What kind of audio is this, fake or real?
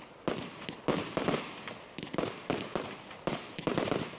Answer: real